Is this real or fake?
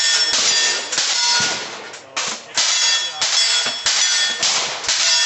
real